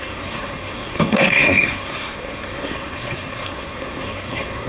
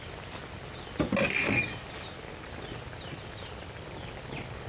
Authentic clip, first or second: second